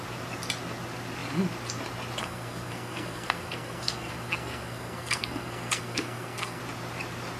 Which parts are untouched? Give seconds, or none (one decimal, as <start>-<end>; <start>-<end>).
0.0-2.2; 6.6-7.4